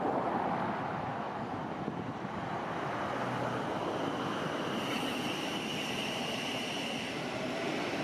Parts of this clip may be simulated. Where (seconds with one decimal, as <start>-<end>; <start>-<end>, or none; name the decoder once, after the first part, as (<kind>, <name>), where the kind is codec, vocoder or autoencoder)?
none